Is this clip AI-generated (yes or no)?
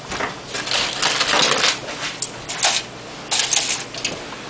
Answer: no